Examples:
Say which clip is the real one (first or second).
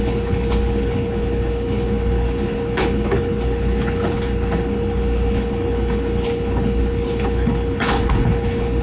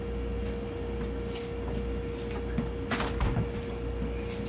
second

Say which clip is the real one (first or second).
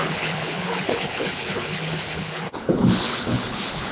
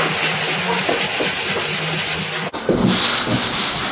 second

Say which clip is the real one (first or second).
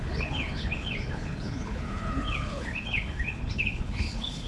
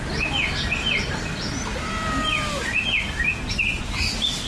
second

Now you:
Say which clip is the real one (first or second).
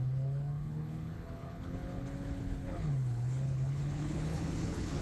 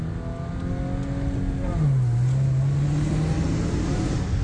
second